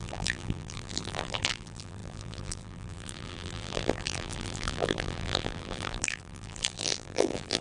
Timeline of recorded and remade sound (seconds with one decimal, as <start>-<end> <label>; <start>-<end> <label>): 0.0-7.6 remade